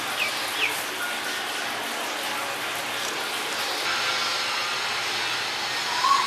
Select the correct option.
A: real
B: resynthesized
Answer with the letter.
A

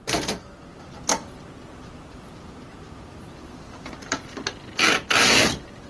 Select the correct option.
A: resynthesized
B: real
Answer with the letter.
A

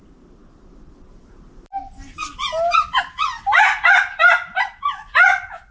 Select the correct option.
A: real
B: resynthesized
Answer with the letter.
A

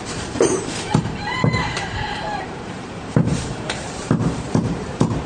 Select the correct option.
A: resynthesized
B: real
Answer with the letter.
A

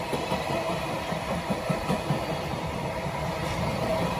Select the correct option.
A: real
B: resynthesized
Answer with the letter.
B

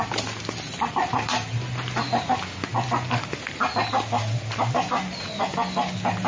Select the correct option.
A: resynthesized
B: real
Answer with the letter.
B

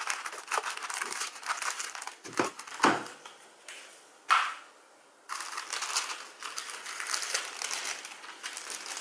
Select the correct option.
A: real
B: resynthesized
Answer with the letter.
A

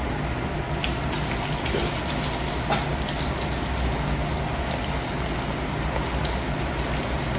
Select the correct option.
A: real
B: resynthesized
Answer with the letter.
A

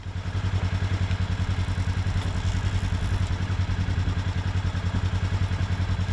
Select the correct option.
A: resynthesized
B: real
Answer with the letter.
B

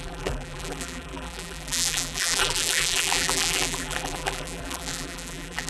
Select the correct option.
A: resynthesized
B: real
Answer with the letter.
A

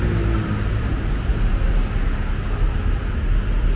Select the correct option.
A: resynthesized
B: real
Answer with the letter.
B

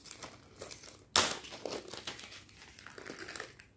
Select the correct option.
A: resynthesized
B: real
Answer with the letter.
B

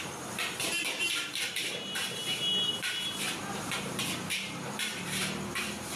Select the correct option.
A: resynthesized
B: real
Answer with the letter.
A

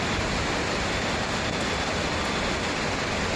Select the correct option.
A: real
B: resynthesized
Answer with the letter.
A